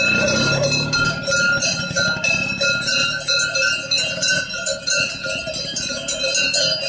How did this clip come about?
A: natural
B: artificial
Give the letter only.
A